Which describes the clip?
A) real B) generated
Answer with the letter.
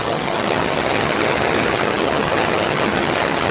B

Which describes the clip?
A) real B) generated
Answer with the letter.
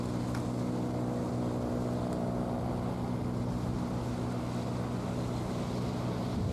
A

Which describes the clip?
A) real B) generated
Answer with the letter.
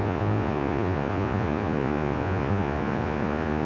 B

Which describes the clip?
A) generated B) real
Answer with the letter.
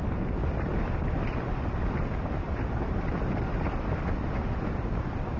B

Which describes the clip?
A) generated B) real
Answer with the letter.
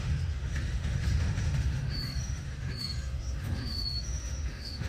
A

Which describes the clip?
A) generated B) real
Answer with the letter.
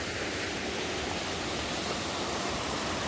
A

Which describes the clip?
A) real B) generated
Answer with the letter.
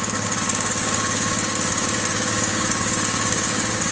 B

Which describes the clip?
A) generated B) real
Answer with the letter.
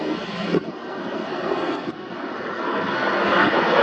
A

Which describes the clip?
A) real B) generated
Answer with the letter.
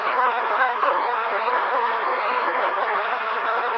B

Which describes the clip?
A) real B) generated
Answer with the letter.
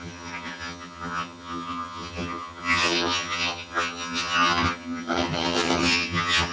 B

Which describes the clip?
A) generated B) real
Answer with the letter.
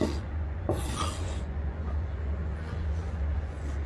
A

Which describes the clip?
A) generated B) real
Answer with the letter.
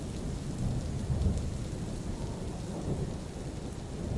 B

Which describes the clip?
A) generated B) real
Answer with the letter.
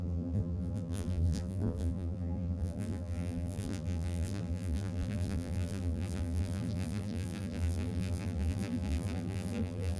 A